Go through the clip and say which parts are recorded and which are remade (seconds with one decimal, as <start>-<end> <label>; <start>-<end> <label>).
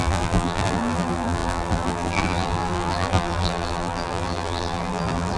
0.0-5.4 remade